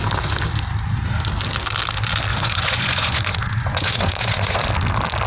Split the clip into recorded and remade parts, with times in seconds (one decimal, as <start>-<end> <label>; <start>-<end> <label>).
0.0-2.3 recorded; 2.3-4.6 remade; 4.6-5.3 recorded